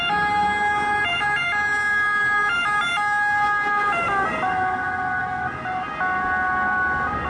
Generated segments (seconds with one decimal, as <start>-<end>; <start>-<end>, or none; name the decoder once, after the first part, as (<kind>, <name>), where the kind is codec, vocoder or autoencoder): none

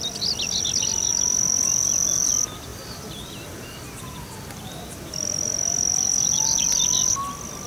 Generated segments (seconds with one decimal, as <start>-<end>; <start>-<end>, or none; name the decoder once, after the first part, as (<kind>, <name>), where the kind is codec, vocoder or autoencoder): 1.1-2.3 (vocoder, BigVGAN v2); 2.7-6.7

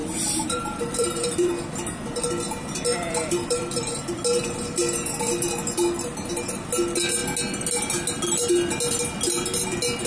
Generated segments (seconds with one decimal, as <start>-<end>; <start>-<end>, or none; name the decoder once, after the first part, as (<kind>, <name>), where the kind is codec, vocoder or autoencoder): 0.0-1.5 (vocoder, BigVGAN v2); 2.9-4.2

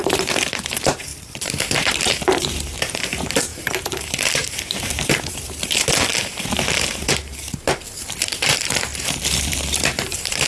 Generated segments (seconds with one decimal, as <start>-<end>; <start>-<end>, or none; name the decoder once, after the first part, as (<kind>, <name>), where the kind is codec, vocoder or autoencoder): 0.0-8.9 (vocoder, BigVGAN v2); 9.4-10.5

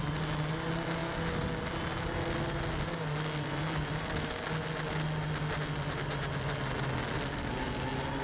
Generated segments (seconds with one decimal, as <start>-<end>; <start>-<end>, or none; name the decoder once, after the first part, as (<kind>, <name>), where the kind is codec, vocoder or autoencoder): none

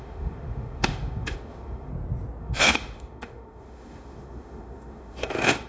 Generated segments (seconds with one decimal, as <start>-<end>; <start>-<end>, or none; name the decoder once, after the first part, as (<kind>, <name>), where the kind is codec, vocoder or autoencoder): 0.0-1.9 (autoencoder, DAC-VAE); 2.4-5.7